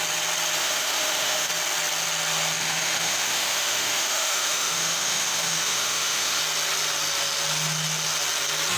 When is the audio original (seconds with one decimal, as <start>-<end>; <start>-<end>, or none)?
0.0-0.6; 1.5-2.6; 6.4-8.8